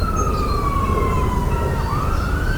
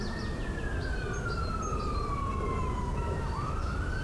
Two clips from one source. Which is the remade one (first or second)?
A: second